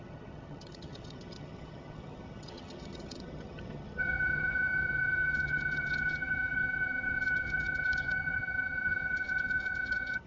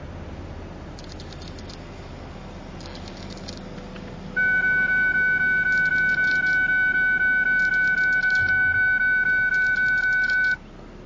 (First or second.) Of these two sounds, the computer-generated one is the first